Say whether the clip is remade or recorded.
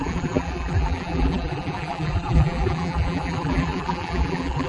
remade